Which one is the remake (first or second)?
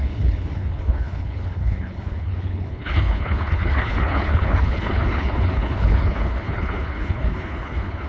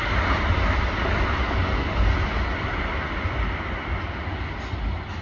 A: first